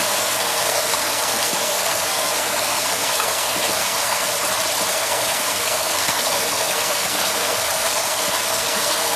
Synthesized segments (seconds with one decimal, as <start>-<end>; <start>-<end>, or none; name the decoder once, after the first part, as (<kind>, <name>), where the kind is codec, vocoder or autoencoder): 0.0-4.3 (codec, SNAC); 4.9-9.2

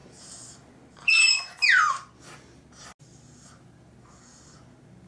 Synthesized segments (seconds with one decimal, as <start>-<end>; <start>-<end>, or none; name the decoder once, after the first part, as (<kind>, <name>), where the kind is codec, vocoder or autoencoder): none

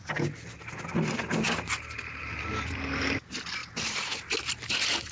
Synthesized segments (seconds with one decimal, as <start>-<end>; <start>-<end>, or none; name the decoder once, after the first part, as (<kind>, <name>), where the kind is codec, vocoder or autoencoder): none

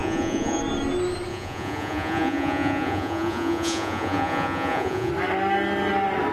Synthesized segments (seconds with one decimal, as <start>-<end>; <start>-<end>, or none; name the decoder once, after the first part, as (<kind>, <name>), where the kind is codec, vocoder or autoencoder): 0.0-0.6 (vocoder, Vocos); 1.3-5.1

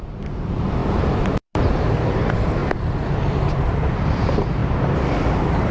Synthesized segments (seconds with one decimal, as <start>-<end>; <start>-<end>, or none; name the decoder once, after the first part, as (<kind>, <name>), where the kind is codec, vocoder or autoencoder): 0.0-4.6 (vocoder, BigVGAN v2); 5.3-5.7

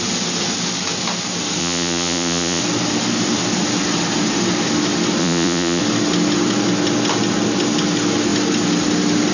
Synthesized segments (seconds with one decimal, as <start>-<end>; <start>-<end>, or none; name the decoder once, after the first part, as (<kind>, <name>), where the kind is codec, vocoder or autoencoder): 1.6-2.6 (vocoder, Vocos); 5.2-5.8

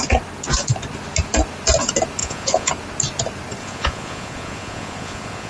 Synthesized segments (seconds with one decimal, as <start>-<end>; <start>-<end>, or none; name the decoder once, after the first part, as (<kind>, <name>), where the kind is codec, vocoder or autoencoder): 2.2-2.7 (vocoder, Vocos); 3.6-5.5